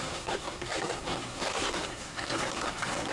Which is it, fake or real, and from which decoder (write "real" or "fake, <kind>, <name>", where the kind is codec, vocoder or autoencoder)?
fake, codec, SNAC